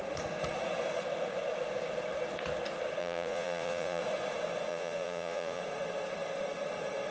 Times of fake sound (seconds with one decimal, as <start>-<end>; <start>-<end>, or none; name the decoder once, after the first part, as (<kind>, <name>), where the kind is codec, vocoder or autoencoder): 3.0-4.0 (vocoder, Vocos); 4.7-5.6